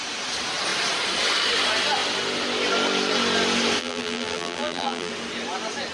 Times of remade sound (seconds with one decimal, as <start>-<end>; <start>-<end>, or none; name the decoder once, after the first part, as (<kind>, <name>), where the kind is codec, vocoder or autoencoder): 3.8-5.1 (vocoder, BigVGAN v2)